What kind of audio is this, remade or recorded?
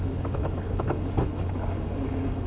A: remade